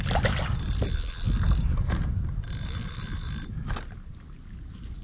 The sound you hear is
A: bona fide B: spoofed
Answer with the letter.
A